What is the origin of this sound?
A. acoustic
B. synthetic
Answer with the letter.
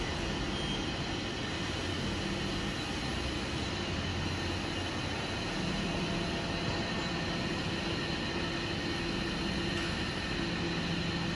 A